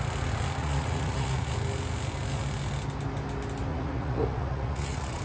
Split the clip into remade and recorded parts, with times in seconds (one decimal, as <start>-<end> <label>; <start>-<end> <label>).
0.0-0.6 recorded; 0.6-1.5 remade; 1.5-3.7 recorded; 3.7-5.2 remade